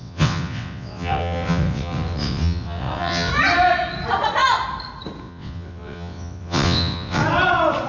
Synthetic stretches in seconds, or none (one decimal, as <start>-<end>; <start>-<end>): 0.0-3.3; 5.2-7.2